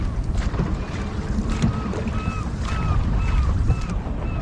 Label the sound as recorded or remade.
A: recorded